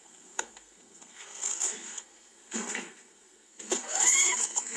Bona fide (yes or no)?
no